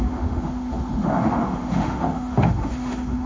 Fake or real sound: fake